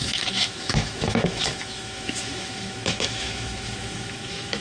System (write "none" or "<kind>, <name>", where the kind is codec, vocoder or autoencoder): autoencoder, DAC-VAE